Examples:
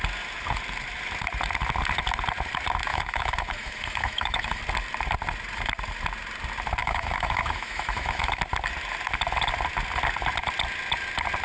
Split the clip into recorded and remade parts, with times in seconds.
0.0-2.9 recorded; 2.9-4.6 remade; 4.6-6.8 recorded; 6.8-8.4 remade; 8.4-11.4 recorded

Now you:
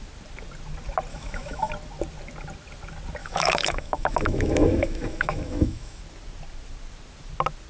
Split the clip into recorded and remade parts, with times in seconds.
0.0-1.1 recorded; 1.1-1.7 remade; 1.7-3.2 recorded; 3.2-6.0 remade; 6.0-7.7 recorded

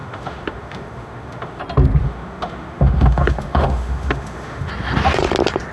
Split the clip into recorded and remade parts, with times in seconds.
0.0-1.6 remade; 1.6-2.0 recorded; 2.0-4.7 remade; 4.7-5.7 recorded

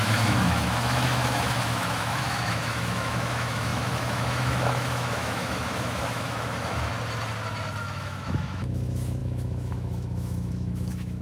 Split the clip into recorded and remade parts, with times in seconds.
0.0-6.9 remade; 6.9-7.8 recorded; 7.8-11.2 remade

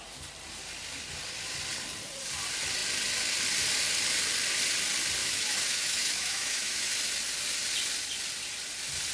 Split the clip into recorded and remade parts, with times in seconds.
0.0-5.2 recorded; 5.2-6.9 remade; 6.9-9.1 recorded